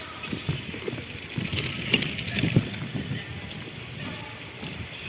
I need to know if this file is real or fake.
real